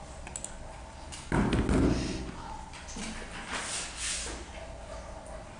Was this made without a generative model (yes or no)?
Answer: yes